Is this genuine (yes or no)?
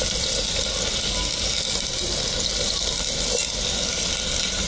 yes